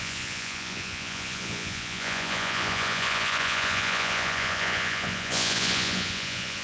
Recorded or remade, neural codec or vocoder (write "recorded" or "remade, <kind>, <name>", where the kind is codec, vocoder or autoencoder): remade, vocoder, Vocos